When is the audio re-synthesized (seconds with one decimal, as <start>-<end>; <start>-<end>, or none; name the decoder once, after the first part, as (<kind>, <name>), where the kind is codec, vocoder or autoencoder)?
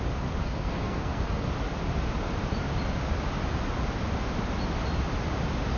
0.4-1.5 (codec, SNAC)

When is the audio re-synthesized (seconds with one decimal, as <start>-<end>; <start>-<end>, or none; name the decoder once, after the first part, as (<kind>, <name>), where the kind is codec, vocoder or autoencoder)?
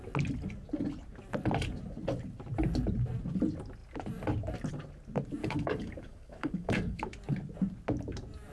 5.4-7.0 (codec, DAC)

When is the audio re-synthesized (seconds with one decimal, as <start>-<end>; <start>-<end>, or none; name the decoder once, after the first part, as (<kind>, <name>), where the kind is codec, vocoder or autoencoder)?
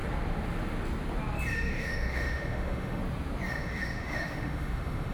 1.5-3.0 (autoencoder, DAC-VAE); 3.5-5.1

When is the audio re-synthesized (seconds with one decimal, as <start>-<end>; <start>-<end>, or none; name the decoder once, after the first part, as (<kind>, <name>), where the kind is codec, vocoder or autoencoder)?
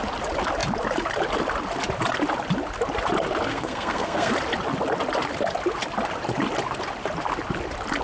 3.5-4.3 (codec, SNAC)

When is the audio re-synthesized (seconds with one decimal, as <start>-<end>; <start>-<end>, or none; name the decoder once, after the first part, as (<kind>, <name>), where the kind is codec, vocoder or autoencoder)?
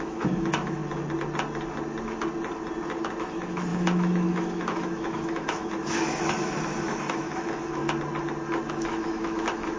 0.0-0.8 (autoencoder, DAC-VAE); 3.2-7.8; 8.7-9.8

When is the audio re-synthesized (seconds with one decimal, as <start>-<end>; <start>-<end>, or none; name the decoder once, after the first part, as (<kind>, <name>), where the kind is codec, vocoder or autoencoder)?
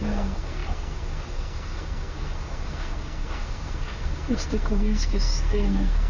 0.0-6.1 (codec, SNAC)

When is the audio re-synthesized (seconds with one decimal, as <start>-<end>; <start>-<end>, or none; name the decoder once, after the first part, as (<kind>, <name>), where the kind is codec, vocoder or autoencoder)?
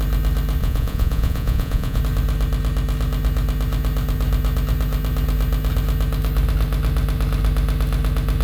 0.6-2.0 (vocoder, Vocos)